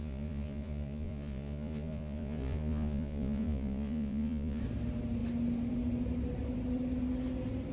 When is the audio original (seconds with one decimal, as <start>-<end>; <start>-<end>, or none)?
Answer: 4.6-7.7